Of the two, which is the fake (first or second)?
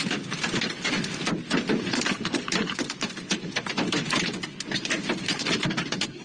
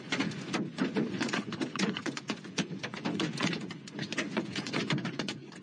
second